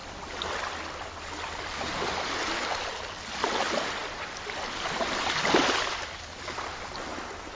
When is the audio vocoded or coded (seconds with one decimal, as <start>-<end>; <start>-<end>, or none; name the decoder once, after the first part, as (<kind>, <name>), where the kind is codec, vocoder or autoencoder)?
none